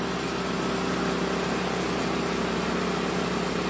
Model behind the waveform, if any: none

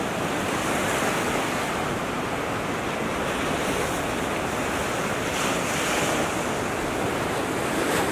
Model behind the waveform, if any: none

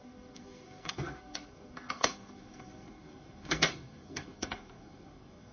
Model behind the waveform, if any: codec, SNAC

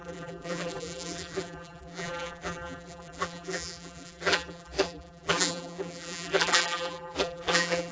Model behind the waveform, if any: vocoder, BigVGAN v2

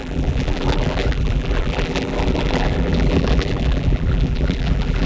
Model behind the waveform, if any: vocoder, BigVGAN v2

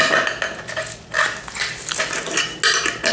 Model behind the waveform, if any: none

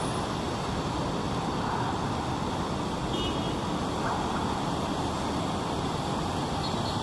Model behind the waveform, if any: none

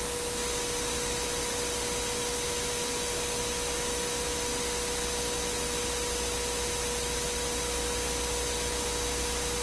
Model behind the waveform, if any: none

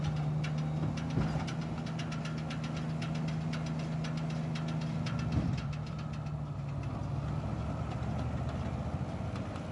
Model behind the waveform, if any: none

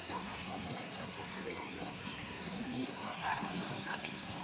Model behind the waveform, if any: codec, SNAC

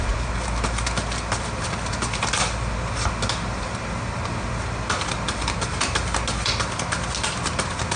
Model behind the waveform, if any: none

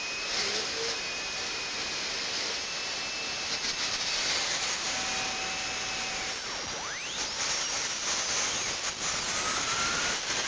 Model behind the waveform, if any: none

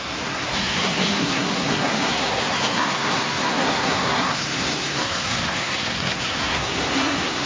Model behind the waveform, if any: codec, SNAC